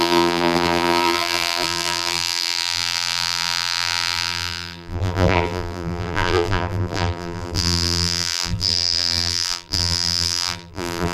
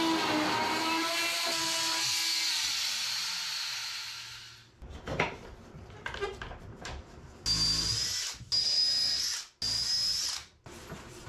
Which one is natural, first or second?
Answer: second